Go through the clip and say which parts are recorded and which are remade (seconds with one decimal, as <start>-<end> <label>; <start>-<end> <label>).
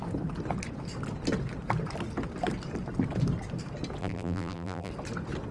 0.0-4.0 recorded; 4.0-4.9 remade; 4.9-5.5 recorded